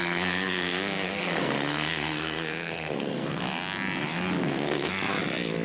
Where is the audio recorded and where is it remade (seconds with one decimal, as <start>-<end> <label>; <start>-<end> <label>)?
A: 0.0-3.4 remade; 3.4-4.4 recorded; 4.4-4.9 remade; 4.9-5.6 recorded